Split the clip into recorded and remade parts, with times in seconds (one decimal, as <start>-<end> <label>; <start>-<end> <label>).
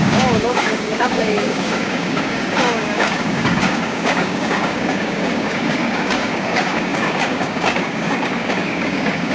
0.0-9.3 remade